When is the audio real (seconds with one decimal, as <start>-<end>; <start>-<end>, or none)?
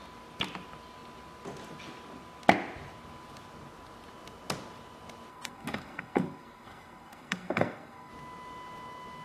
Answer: 0.0-5.3; 8.1-9.2